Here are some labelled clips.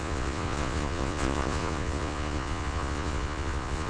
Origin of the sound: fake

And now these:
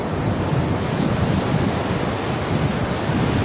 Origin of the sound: real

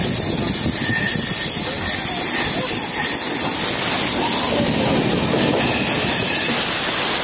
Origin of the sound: real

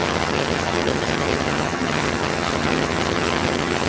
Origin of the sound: fake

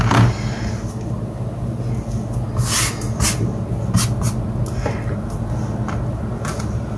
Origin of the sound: real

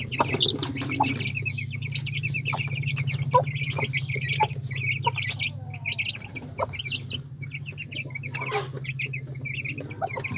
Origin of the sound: real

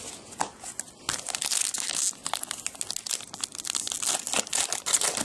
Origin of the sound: real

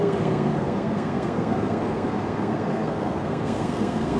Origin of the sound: fake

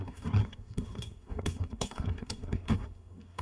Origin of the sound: fake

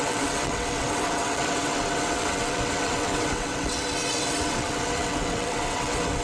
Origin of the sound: fake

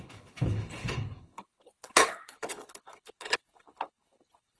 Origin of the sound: fake